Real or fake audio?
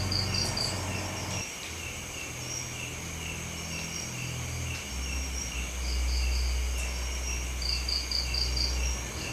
real